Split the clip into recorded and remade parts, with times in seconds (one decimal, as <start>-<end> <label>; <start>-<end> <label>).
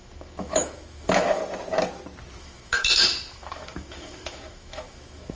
0.0-1.4 remade; 1.4-2.4 recorded; 2.4-5.4 remade